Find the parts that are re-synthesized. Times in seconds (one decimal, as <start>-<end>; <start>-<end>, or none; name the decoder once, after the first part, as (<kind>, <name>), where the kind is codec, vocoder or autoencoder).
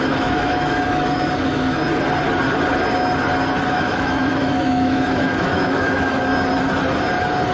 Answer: 0.0-1.8 (autoencoder, DAC-VAE); 3.7-6.3